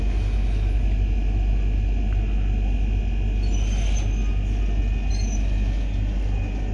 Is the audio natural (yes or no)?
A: yes